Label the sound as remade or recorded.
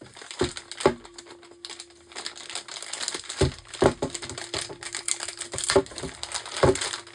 recorded